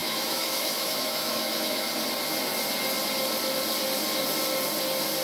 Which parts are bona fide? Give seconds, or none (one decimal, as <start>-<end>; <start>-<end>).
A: 1.9-5.2